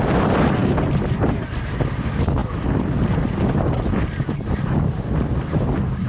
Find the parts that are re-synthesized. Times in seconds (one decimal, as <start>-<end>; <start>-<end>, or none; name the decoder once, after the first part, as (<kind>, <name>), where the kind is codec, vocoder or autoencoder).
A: none